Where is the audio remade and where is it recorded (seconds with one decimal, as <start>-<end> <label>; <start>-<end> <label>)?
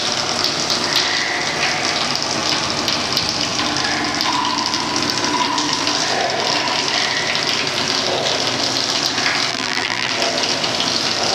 0.0-9.5 recorded; 9.5-10.1 remade; 10.1-11.3 recorded